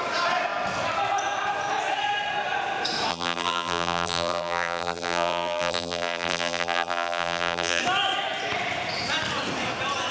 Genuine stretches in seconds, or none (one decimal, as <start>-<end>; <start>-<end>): 0.0-3.1; 7.8-10.1